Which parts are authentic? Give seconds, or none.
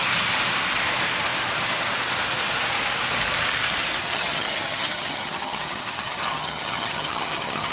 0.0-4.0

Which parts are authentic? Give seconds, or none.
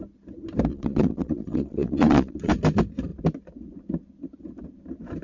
0.0-0.7; 2.5-5.2